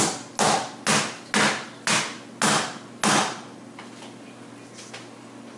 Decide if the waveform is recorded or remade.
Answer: recorded